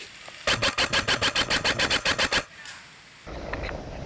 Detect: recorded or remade recorded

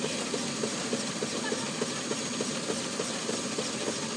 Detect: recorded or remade recorded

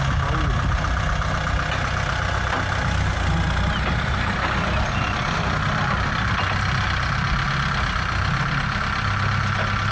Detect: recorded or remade recorded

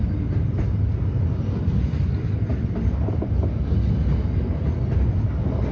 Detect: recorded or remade recorded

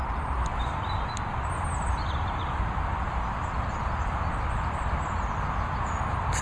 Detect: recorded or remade recorded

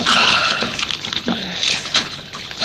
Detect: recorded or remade remade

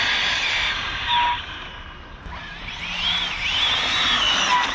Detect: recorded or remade recorded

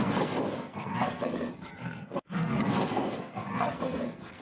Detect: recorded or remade remade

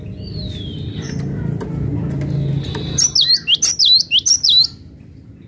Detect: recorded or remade recorded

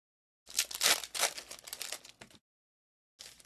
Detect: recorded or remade recorded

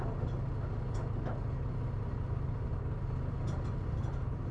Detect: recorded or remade recorded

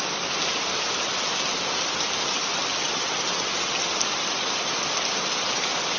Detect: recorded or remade recorded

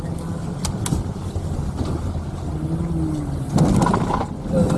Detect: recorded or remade recorded